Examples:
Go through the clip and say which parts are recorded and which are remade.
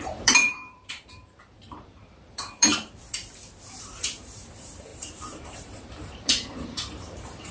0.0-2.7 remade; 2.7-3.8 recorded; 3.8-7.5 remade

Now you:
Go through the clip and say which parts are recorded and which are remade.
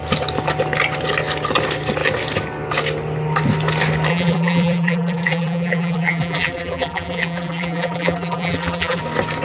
0.0-4.1 recorded; 4.1-9.0 remade; 9.0-9.4 recorded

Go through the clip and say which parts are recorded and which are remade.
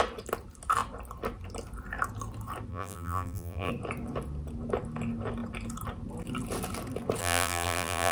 0.0-2.7 recorded; 2.7-3.7 remade; 3.7-7.2 recorded; 7.2-8.1 remade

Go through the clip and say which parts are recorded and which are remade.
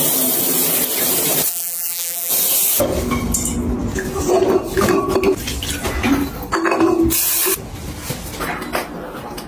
0.0-1.5 recorded; 1.5-2.3 remade; 2.3-9.5 recorded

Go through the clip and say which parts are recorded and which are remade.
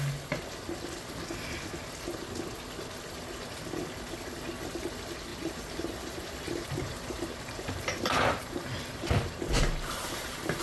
0.0-5.3 recorded; 5.3-10.6 remade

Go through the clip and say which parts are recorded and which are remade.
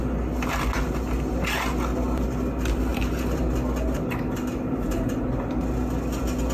0.0-2.9 recorded; 2.9-3.4 remade; 3.4-6.5 recorded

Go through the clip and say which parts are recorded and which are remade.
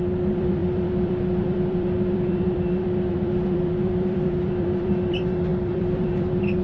0.0-6.6 remade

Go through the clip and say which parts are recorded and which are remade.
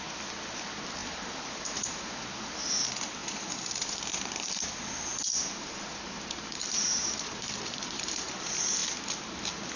0.0-1.0 recorded; 1.0-2.7 remade; 2.7-3.2 recorded; 3.2-4.0 remade; 4.0-5.4 recorded; 5.4-8.3 remade; 8.3-9.8 recorded